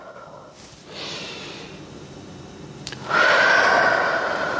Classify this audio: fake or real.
fake